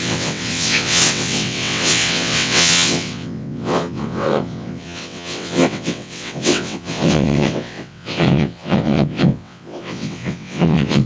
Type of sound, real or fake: fake